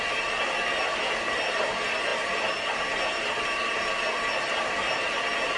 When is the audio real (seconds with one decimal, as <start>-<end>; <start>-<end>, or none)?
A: 0.0-5.6